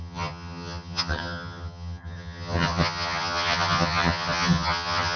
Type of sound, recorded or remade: remade